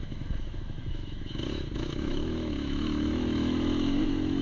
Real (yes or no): no